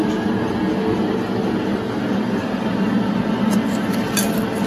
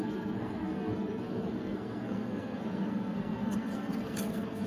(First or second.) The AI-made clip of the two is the second